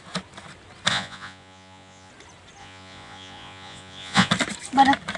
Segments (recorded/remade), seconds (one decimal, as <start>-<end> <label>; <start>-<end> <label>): 0.0-0.9 recorded; 0.9-2.1 remade; 2.1-2.6 recorded; 2.6-4.3 remade; 4.3-5.2 recorded